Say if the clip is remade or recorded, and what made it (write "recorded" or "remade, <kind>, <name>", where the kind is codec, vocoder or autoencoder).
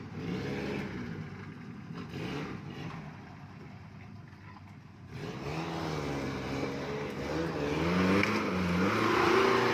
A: recorded